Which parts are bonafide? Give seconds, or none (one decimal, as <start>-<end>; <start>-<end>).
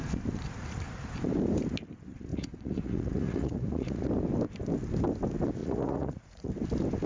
0.0-2.3; 4.1-5.6; 6.5-7.1